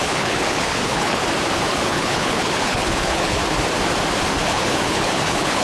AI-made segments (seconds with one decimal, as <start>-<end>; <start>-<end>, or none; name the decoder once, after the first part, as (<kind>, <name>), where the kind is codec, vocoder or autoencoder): 0.0-1.2 (codec, HILCodec); 1.7-3.4; 4.4-5.6